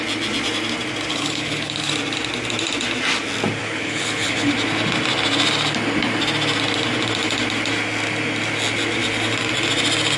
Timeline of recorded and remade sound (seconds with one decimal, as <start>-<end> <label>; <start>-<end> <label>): 0.0-1.1 recorded; 1.1-1.9 remade; 1.9-3.6 recorded; 3.6-4.5 remade; 4.5-10.2 recorded